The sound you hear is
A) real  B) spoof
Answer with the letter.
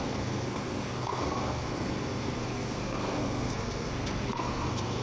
B